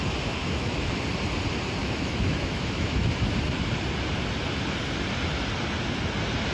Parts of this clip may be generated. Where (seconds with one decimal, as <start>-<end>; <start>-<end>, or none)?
0.4-0.9; 1.8-3.2